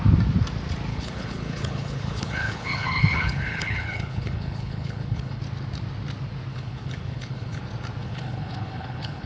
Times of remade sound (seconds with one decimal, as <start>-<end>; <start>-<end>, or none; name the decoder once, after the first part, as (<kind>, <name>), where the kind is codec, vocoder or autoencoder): 0.9-5.4 (codec, HILCodec); 6.5-7.6; 8.0-9.3